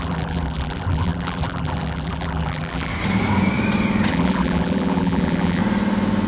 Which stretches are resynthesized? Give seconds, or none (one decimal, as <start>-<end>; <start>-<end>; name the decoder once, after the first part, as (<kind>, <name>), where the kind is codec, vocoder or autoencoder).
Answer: 0.0-2.9 (vocoder, BigVGAN v2); 4.1-5.6